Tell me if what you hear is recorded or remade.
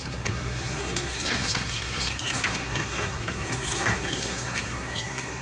remade